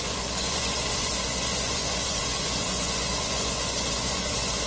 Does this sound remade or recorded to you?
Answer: remade